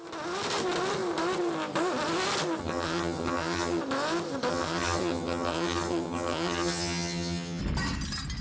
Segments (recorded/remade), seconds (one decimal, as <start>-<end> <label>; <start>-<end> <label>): 0.0-2.6 recorded; 2.6-3.8 remade; 3.8-4.5 recorded; 4.5-7.6 remade; 7.6-8.4 recorded